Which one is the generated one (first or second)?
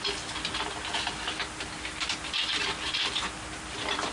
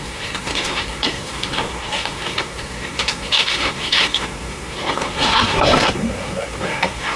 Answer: second